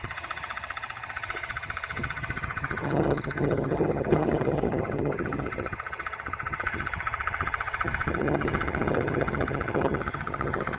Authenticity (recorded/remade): remade